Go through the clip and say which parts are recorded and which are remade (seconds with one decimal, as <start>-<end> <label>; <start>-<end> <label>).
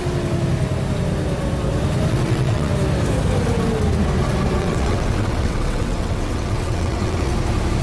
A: 0.0-2.1 recorded; 2.1-2.7 remade; 2.7-4.6 recorded; 4.6-7.3 remade; 7.3-7.8 recorded